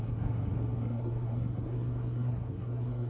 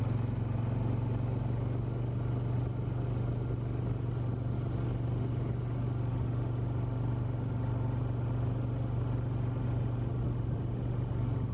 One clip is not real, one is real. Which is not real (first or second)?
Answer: first